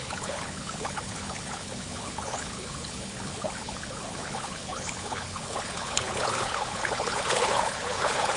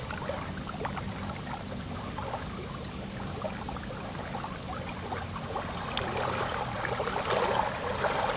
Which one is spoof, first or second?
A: first